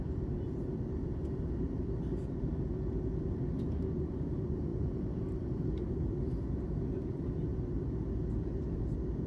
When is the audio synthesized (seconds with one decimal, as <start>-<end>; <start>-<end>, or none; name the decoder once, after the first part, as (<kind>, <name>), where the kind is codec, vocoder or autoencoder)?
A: 4.7-6.1 (vocoder, BigVGAN v2)